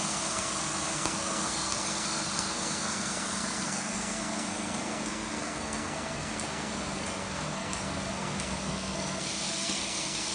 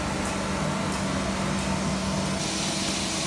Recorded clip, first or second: second